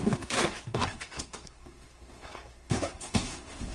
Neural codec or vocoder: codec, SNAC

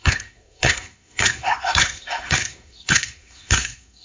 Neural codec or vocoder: codec, SNAC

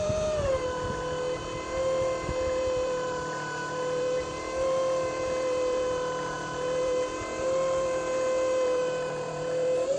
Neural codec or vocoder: vocoder, BigVGAN v2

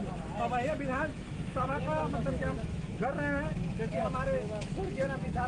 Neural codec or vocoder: autoencoder, DAC-VAE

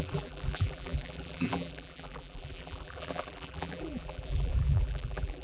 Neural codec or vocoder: vocoder, BigVGAN v2